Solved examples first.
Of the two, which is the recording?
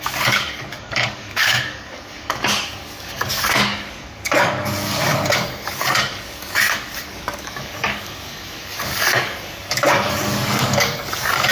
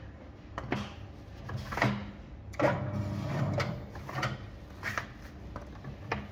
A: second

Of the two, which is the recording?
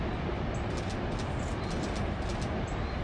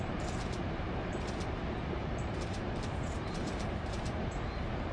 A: first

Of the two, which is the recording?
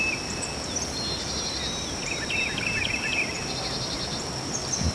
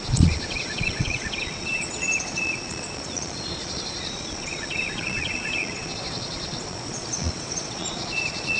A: first